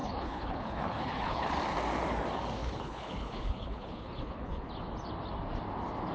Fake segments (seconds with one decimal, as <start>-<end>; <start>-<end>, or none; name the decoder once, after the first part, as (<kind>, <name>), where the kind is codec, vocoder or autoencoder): 0.0-1.5 (codec, HILCodec); 2.6-4.7